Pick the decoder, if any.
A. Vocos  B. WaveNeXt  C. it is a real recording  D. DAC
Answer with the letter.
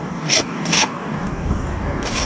D